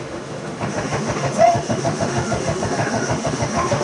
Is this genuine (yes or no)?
no